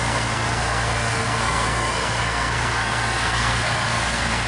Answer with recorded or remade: remade